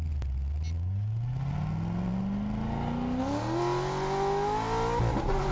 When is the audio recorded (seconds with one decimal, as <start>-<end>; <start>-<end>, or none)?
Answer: 0.0-5.5